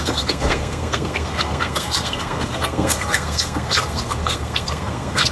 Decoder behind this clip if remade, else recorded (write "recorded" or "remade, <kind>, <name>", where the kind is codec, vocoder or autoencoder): remade, codec, SNAC